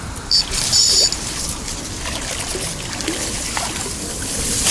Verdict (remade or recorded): recorded